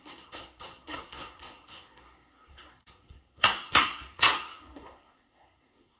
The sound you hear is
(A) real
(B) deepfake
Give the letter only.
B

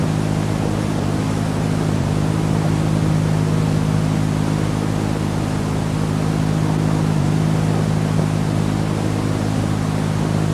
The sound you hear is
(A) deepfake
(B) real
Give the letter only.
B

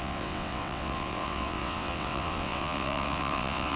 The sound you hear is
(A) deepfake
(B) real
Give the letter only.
A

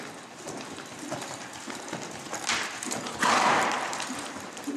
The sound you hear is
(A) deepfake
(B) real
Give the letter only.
A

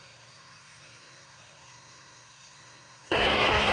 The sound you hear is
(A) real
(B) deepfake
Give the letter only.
B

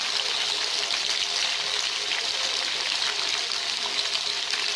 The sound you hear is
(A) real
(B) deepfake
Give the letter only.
A